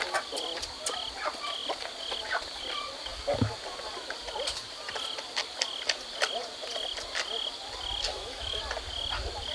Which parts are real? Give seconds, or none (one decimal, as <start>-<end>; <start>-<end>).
0.0-8.1; 8.6-9.5